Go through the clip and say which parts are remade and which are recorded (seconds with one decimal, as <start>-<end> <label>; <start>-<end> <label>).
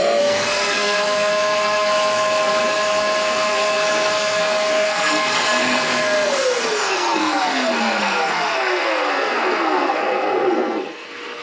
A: 0.0-11.4 remade